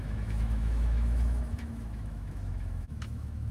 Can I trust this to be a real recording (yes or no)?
no